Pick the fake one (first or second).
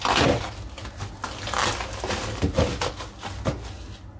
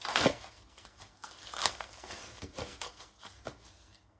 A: second